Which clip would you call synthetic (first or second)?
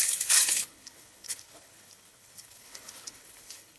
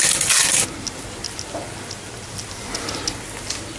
first